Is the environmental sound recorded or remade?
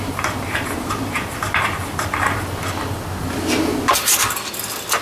recorded